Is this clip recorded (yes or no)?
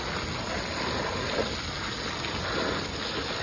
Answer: yes